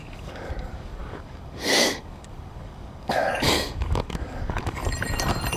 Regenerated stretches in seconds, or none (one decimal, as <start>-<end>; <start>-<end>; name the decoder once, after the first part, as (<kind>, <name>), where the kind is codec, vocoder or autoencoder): 0.0-4.8 (codec, DAC)